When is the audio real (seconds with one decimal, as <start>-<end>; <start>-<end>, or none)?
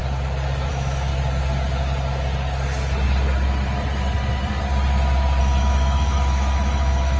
0.0-0.7; 1.1-5.4